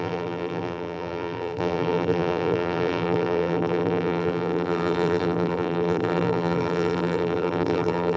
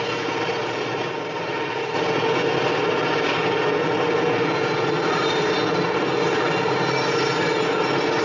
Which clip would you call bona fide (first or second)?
second